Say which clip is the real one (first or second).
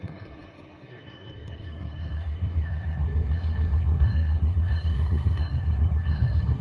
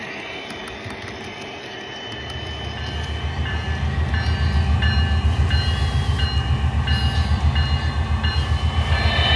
second